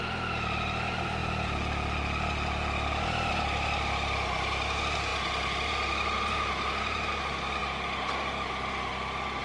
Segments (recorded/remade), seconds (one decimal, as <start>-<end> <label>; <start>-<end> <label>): 0.0-1.2 remade; 1.2-3.3 recorded; 3.3-5.1 remade; 5.1-5.7 recorded; 5.7-7.6 remade; 7.6-9.4 recorded